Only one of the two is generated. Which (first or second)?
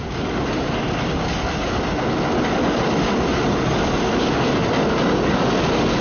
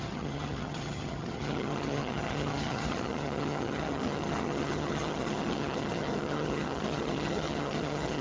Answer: second